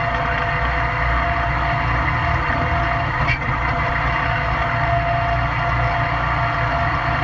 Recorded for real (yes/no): yes